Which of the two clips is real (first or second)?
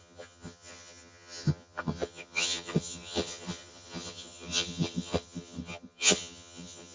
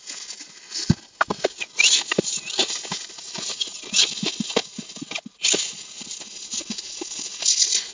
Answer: second